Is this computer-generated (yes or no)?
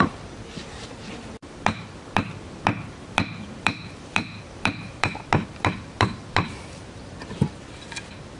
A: yes